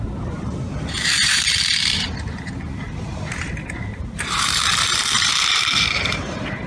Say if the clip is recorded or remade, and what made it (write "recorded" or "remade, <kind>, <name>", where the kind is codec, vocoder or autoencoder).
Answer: remade, vocoder, BigVGAN v2